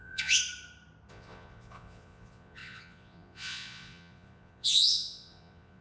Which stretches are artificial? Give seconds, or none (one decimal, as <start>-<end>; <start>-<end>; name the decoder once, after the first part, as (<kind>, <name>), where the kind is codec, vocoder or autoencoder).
0.0-0.4 (vocoder, Vocos); 1.1-5.8